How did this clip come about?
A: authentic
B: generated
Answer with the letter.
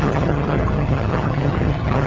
B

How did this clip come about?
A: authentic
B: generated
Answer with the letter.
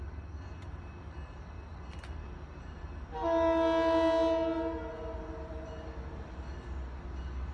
A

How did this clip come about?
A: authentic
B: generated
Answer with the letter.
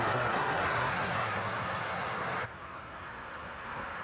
B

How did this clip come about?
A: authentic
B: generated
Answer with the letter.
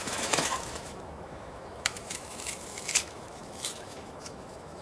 B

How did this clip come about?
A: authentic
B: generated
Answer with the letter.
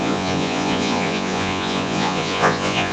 B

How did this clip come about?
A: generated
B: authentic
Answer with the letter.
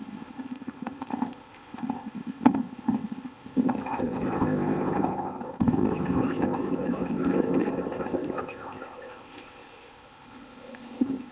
A